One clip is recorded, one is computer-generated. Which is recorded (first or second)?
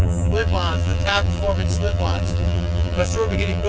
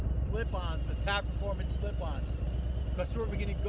second